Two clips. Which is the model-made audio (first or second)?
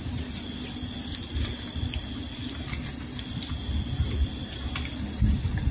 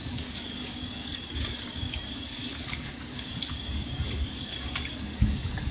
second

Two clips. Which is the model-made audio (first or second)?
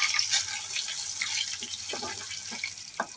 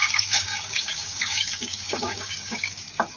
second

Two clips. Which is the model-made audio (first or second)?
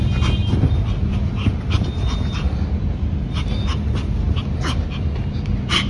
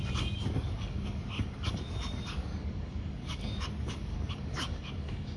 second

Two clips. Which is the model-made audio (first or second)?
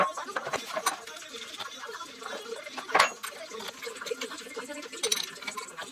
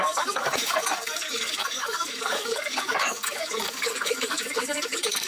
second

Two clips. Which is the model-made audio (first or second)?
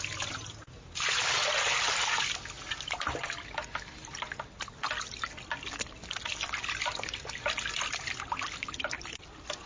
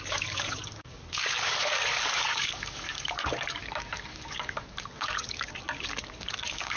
second